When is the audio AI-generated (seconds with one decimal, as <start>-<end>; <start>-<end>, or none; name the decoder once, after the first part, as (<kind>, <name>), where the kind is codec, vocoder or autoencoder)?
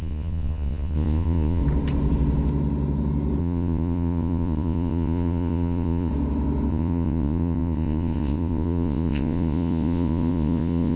0.0-1.6 (vocoder, Vocos); 3.4-6.1; 6.7-11.0